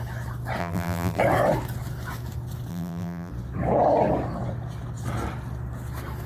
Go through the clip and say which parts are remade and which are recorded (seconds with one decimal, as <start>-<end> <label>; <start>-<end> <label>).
0.0-0.6 recorded; 0.6-1.2 remade; 1.2-2.7 recorded; 2.7-3.3 remade; 3.3-6.3 recorded